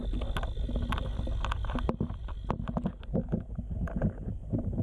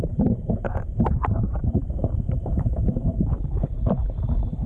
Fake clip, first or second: second